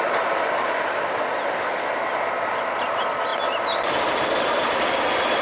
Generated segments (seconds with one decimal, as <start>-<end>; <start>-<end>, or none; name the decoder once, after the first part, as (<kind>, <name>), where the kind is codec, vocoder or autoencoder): none